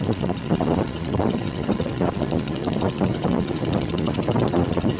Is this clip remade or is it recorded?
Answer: remade